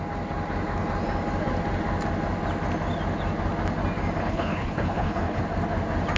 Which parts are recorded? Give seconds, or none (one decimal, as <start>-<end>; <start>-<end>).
0.0-4.2; 5.4-6.2